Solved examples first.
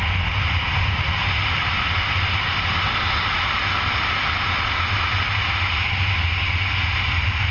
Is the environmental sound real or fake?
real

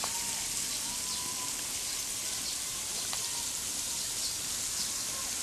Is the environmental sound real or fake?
real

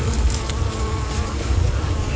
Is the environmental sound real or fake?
fake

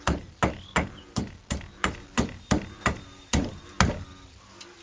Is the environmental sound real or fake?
real